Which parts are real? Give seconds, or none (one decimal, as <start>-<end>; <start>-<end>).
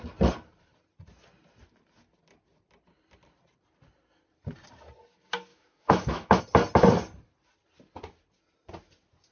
0.0-5.5; 6.4-9.3